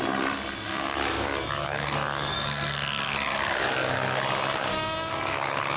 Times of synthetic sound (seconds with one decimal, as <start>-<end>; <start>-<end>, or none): 0.7-4.2; 4.7-5.8